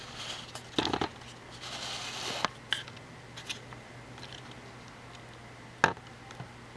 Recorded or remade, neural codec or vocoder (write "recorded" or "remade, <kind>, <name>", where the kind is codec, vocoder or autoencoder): recorded